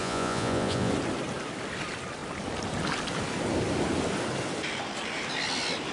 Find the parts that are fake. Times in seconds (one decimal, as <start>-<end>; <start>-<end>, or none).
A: 0.0-0.9